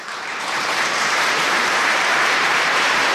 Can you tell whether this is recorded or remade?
remade